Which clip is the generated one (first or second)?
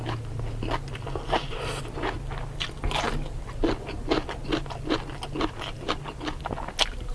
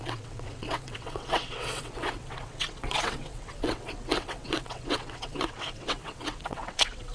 second